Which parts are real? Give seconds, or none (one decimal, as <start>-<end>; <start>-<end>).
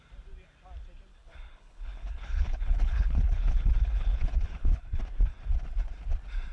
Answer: 0.0-1.1; 5.0-6.5